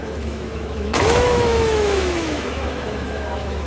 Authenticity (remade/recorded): remade